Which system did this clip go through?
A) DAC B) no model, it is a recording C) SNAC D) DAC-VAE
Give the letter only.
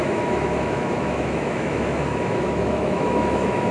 D